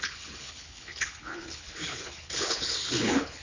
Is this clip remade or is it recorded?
remade